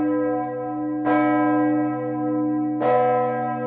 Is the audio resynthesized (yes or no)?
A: no